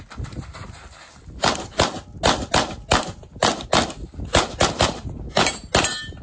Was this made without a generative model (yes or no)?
yes